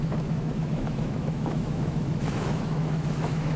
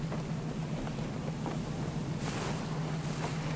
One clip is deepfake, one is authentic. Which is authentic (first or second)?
second